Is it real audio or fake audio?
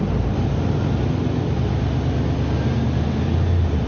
real